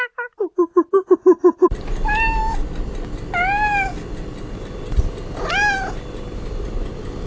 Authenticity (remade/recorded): recorded